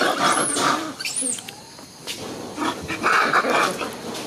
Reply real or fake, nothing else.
real